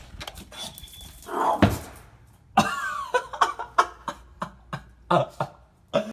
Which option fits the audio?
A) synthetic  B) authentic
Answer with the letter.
B